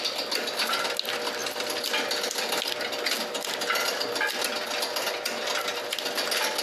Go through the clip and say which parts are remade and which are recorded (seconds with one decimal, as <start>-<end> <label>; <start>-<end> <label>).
0.0-6.6 recorded